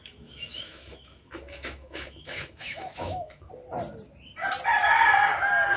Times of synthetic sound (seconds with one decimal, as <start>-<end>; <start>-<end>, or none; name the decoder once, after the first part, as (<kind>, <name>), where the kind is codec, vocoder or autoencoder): 0.0-3.5 (autoencoder, DAC-VAE)